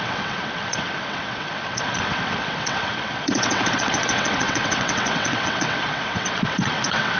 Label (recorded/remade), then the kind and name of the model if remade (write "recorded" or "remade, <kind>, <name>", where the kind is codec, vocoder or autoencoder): remade, vocoder, WaveNeXt